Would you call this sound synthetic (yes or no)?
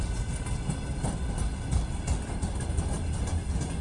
no